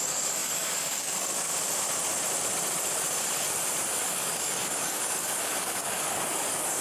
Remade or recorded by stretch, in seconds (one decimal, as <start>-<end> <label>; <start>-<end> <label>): 0.0-1.5 remade; 1.5-4.1 recorded; 4.1-6.8 remade